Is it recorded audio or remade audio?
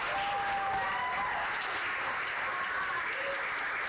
recorded